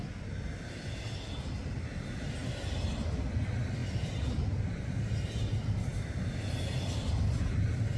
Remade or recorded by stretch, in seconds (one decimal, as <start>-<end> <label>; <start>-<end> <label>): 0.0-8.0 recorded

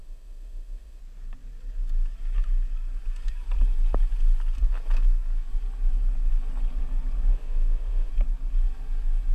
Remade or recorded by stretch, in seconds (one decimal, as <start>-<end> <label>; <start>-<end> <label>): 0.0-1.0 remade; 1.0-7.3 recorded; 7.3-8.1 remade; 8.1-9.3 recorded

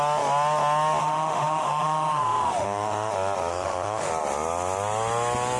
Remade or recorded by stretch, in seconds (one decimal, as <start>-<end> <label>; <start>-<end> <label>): 0.0-1.0 recorded; 1.0-3.1 remade; 3.1-3.5 recorded; 3.5-4.1 remade; 4.1-5.6 recorded

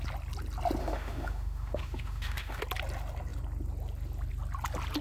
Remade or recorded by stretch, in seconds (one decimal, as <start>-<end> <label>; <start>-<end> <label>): 0.0-0.8 recorded; 0.8-2.6 remade; 2.6-5.0 recorded

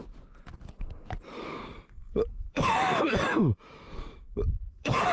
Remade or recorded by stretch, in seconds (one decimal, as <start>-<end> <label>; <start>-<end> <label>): 0.0-2.0 recorded; 2.0-5.1 remade

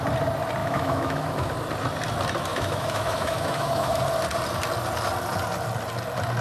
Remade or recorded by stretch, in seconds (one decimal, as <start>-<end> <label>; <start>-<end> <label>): 0.0-0.6 recorded; 0.6-1.5 remade; 1.5-2.5 recorded; 2.5-4.0 remade; 4.0-6.4 recorded